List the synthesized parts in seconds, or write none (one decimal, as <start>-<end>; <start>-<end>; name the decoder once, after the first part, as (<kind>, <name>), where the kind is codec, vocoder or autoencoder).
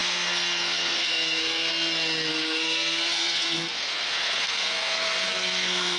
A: 0.0-1.7 (codec, SNAC); 2.3-6.0